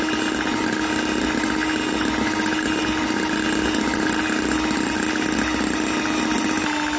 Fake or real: real